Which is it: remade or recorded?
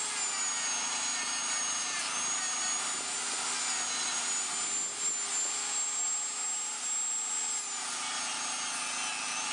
recorded